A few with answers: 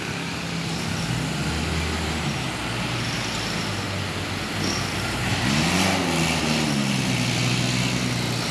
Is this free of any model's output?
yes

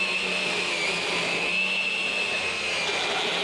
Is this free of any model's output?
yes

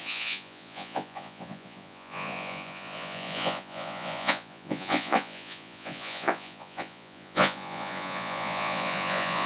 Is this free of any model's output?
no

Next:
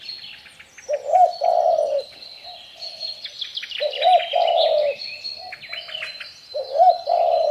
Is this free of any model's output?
yes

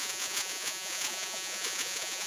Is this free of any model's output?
no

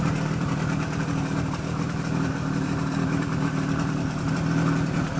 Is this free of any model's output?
yes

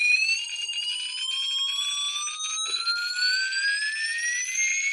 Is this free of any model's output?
yes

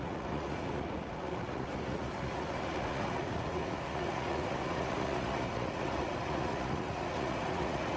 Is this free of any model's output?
no